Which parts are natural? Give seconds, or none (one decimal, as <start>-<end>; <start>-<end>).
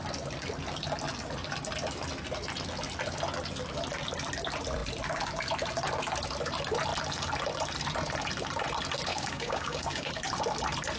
0.0-9.1; 10.1-11.0